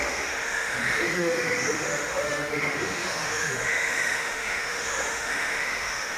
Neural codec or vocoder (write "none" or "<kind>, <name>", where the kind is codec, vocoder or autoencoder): autoencoder, DAC-VAE